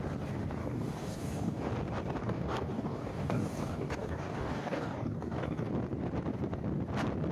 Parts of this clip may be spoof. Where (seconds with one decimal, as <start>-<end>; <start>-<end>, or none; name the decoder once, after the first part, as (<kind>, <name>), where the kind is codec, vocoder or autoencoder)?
0.6-1.7 (codec, DAC); 2.2-5.7